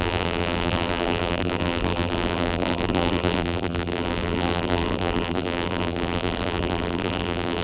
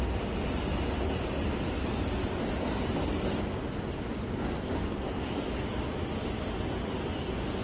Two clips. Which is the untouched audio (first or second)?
second